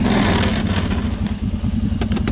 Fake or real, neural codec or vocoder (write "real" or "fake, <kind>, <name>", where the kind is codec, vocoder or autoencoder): real